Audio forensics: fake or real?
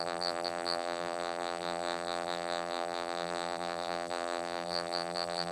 fake